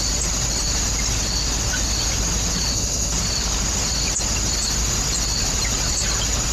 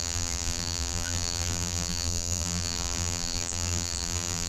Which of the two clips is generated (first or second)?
second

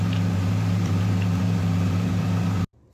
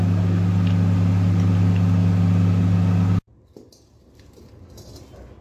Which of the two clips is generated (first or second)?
first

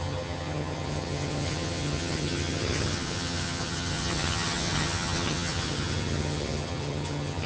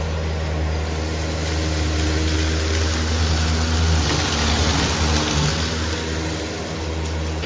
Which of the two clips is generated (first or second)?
first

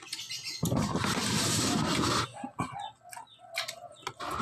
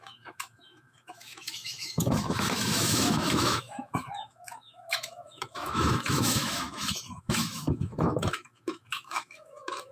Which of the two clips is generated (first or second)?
second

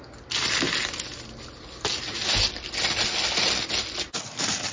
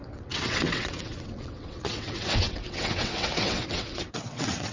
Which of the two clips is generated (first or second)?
second